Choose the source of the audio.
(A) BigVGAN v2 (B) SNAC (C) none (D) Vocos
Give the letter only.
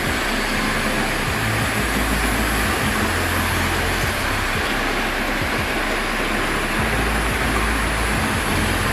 C